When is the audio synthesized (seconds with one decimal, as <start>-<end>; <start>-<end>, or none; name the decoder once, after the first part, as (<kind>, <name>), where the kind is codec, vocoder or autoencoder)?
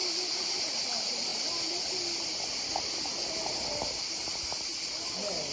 none